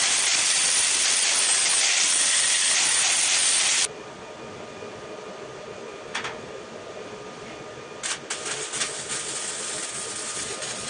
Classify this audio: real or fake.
real